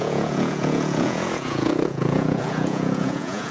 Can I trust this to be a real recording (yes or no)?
no